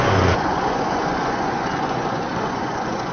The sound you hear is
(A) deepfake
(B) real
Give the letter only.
A